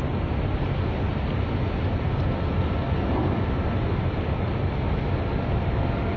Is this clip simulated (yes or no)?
no